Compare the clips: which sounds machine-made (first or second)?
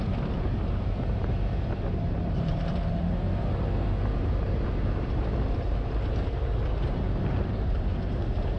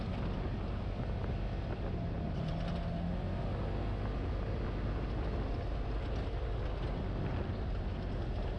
first